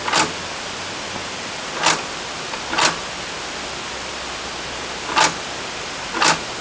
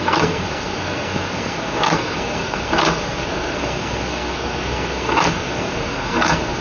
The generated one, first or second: second